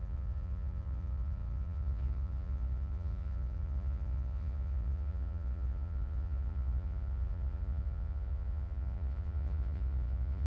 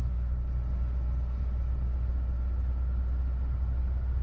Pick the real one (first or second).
second